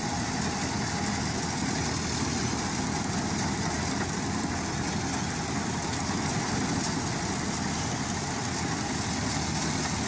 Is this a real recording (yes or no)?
yes